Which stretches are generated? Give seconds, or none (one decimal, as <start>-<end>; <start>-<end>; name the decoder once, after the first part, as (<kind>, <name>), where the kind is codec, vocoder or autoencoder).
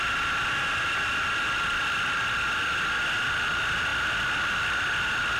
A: none